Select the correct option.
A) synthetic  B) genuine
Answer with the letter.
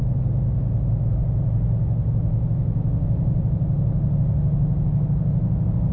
B